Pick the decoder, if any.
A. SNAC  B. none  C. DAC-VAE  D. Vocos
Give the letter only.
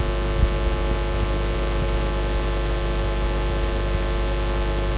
B